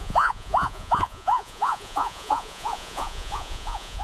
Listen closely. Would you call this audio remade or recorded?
remade